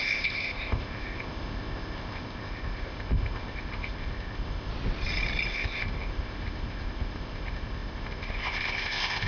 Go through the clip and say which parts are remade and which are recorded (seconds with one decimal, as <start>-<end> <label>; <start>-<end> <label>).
0.0-4.7 remade; 4.7-5.5 recorded; 5.5-9.3 remade